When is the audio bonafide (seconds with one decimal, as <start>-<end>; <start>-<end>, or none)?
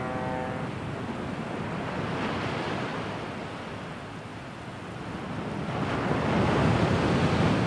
0.0-7.7